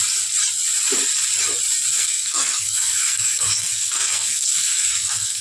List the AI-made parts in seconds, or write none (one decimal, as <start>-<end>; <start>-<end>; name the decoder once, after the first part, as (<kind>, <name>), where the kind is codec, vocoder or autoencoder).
1.9-5.4 (codec, SNAC)